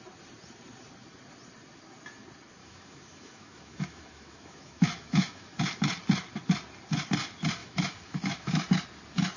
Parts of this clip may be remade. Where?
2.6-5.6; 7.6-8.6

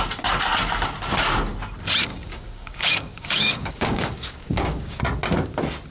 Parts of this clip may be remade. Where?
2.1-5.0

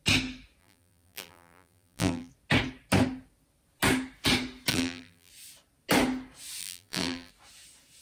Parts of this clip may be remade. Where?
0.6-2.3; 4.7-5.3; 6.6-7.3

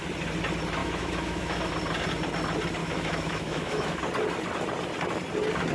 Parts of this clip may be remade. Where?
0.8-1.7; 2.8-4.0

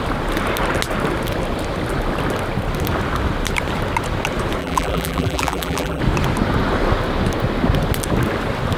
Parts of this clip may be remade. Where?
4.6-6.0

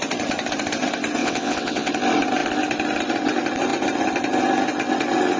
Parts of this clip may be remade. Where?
1.2-1.9